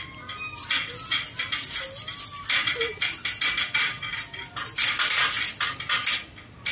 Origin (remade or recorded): recorded